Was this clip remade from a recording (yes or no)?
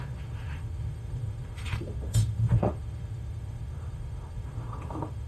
yes